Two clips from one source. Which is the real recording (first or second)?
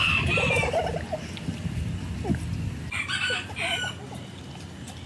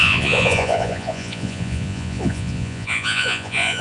first